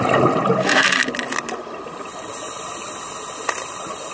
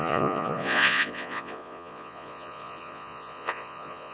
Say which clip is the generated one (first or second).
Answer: second